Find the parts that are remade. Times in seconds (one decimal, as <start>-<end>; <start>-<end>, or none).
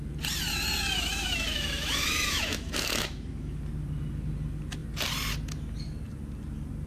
0.5-3.6